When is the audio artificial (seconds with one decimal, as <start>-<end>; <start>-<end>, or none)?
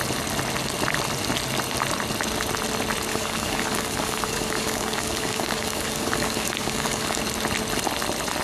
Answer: 3.1-7.2